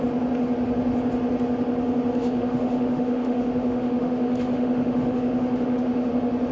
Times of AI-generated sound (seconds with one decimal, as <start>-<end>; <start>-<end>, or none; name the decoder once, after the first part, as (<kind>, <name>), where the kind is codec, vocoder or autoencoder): 2.2-6.1 (autoencoder, DAC-VAE)